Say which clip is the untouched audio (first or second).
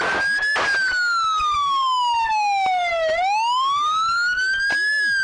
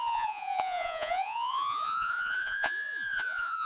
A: first